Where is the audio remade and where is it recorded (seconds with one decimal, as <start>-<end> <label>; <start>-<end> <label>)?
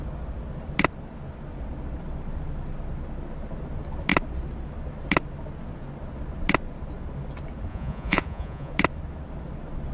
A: 0.0-7.7 recorded; 7.7-8.7 remade; 8.7-9.9 recorded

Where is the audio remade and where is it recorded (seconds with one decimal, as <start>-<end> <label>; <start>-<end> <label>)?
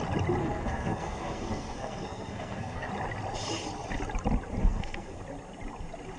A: 0.0-0.4 recorded; 0.4-2.9 remade; 2.9-4.6 recorded; 4.6-5.2 remade; 5.2-6.2 recorded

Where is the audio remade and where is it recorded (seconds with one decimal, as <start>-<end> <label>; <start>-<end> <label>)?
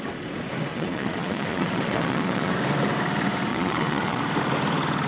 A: 0.0-0.7 recorded; 0.7-2.5 remade; 2.5-3.5 recorded; 3.5-4.2 remade; 4.2-5.1 recorded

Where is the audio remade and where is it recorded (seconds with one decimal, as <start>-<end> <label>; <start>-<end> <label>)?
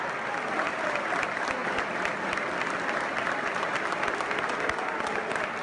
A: 0.0-5.6 recorded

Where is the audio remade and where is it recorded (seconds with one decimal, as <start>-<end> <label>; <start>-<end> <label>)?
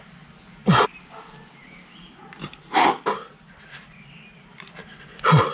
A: 0.0-5.5 recorded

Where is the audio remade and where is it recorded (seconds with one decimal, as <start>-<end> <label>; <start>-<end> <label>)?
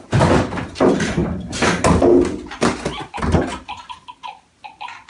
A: 0.0-5.1 recorded